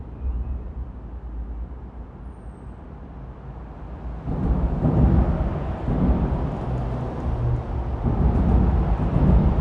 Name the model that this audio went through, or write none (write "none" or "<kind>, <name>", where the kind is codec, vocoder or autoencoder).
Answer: none